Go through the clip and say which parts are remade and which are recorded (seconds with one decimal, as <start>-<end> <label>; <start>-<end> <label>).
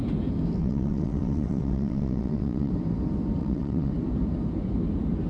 0.0-0.6 recorded; 0.6-2.7 remade; 2.7-3.4 recorded; 3.4-3.9 remade; 3.9-5.3 recorded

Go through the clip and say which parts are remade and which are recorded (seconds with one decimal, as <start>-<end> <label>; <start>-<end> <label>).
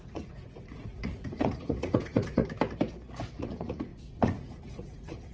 0.0-2.4 remade; 2.4-3.3 recorded; 3.3-5.3 remade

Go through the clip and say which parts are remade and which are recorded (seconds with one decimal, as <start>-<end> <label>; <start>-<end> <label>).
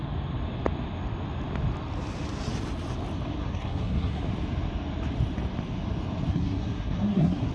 0.0-3.4 recorded; 3.4-4.2 remade; 4.2-6.3 recorded; 6.3-7.5 remade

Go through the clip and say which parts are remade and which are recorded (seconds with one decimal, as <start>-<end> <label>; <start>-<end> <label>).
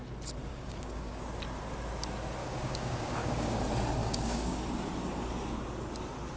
0.0-0.5 recorded; 0.5-1.2 remade; 1.2-2.4 recorded; 2.4-3.6 remade; 3.6-4.0 recorded; 4.0-4.6 remade; 4.6-6.4 recorded